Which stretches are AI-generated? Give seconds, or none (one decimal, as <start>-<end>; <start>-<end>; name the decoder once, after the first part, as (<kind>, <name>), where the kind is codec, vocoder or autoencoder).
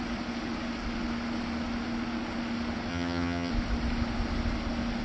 2.9-3.5 (vocoder, HiFi-GAN)